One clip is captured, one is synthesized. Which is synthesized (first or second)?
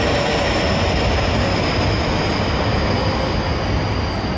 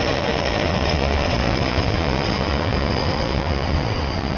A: second